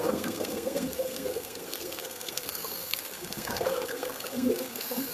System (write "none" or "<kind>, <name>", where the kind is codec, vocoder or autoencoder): codec, SNAC